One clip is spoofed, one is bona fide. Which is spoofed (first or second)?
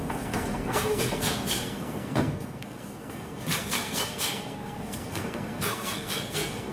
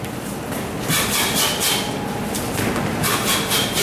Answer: first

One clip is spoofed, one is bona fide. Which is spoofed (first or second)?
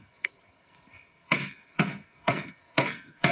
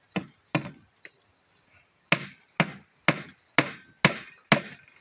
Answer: first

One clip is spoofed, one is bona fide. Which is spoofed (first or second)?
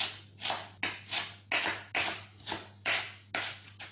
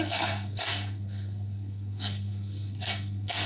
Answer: second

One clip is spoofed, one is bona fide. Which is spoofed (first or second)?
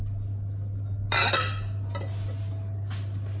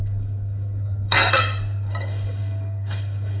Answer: second